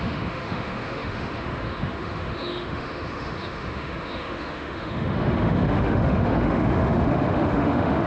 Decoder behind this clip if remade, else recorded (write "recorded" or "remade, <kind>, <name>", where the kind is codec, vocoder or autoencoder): remade, autoencoder, DAC-VAE